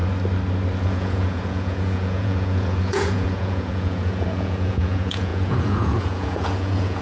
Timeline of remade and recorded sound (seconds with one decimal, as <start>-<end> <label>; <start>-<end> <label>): 0.0-0.8 recorded; 0.8-7.0 remade